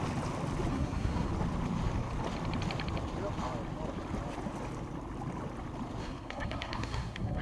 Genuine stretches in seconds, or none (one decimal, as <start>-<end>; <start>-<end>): 0.0-0.7; 1.3-6.0